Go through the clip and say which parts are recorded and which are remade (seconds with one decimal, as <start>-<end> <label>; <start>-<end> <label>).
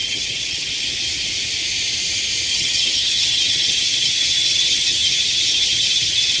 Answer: 0.0-0.7 remade; 0.7-2.5 recorded; 2.5-6.4 remade